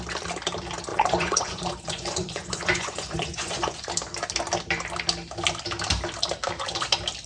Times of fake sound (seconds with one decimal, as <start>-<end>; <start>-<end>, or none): 0.9-3.9